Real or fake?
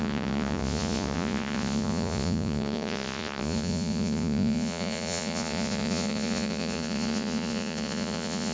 fake